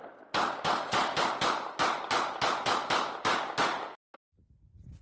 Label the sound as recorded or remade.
recorded